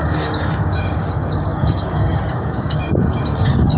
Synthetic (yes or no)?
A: yes